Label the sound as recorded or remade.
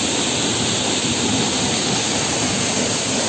recorded